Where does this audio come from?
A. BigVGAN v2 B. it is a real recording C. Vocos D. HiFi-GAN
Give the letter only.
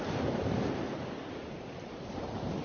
A